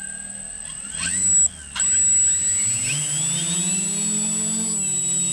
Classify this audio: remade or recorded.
recorded